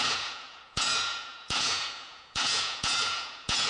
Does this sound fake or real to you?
fake